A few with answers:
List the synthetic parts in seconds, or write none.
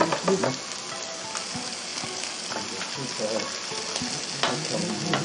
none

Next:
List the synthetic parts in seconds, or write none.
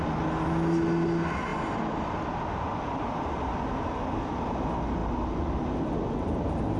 none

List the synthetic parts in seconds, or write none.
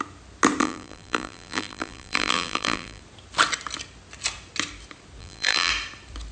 0.6-3.0 (vocoder, BigVGAN v2); 5.2-5.7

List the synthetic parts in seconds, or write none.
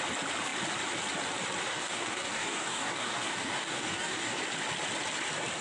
1.7-4.4 (codec, DAC)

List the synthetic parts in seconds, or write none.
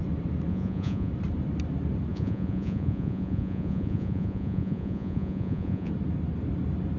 0.5-1.1 (vocoder, Vocos); 2.1-5.9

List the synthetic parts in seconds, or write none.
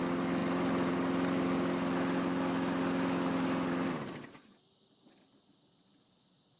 none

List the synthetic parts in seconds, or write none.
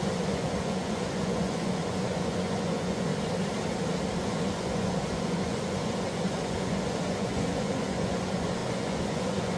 0.0-3.1 (vocoder, Vocos); 4.2-9.6